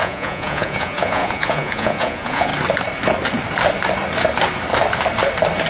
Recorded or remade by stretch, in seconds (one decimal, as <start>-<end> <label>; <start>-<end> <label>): 0.0-2.5 remade; 2.5-5.7 recorded